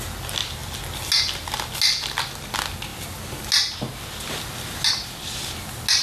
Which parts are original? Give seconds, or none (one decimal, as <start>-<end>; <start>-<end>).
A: 0.0-6.0